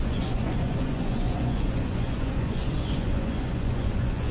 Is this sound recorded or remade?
remade